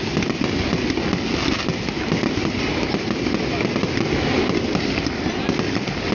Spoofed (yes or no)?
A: no